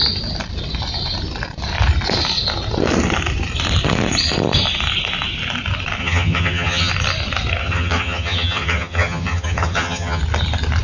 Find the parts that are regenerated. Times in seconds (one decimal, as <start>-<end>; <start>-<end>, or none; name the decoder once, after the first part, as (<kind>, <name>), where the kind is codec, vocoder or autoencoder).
6.0-6.9 (vocoder, HiFi-GAN); 7.6-10.2